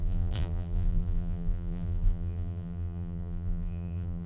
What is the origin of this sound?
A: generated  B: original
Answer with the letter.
A